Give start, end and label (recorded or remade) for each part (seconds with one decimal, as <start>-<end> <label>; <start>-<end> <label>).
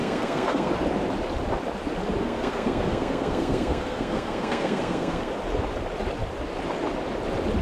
0.0-0.7 remade; 0.7-2.2 recorded; 2.2-5.3 remade; 5.3-7.6 recorded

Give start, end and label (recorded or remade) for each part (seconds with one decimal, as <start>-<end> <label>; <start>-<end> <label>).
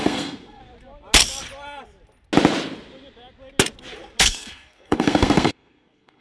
0.0-0.6 remade; 0.6-4.2 recorded; 4.2-6.2 remade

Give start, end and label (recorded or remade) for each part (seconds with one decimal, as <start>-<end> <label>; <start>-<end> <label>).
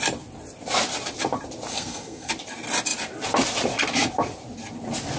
0.0-1.7 recorded; 1.7-2.3 remade; 2.3-5.2 recorded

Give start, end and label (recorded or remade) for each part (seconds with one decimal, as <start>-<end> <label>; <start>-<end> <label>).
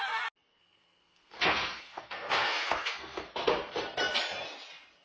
0.0-0.5 recorded; 0.5-3.5 remade; 3.5-5.0 recorded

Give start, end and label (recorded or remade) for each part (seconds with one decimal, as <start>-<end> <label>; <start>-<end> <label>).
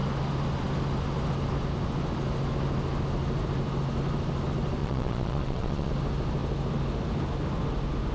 0.0-4.8 recorded; 4.8-5.9 remade; 5.9-8.1 recorded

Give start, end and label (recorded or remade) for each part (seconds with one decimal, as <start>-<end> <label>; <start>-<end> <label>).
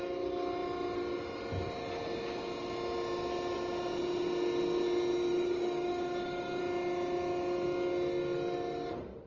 0.0-5.3 recorded; 5.3-6.6 remade; 6.6-9.3 recorded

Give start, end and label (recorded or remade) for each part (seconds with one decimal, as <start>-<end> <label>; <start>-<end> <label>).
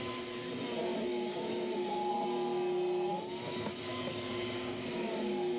0.0-0.8 recorded; 0.8-2.1 remade; 2.1-3.9 recorded; 3.9-5.1 remade; 5.1-5.6 recorded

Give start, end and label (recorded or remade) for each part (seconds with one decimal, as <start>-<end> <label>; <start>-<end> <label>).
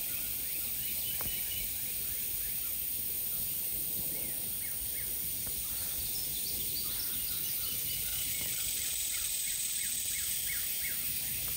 0.0-8.1 recorded; 8.1-11.1 remade; 11.1-11.6 recorded